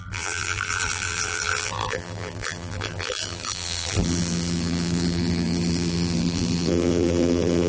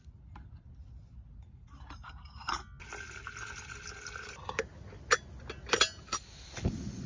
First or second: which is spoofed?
first